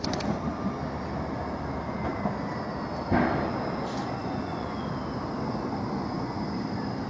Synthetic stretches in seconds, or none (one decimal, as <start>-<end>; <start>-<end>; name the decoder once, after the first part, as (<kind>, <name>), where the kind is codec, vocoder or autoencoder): 4.0-4.9 (vocoder, Vocos); 6.0-6.6